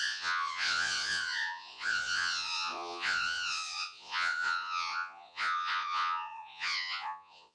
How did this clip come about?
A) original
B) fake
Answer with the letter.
B